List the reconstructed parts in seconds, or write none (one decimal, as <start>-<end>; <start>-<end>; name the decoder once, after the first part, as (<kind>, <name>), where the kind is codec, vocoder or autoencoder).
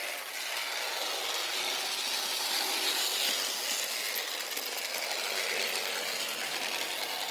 none